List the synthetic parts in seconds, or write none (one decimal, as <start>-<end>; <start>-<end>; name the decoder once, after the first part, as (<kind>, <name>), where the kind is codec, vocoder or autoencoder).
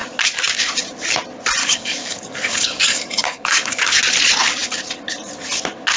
1.6-4.0 (codec, DAC)